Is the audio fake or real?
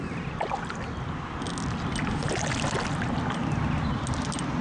real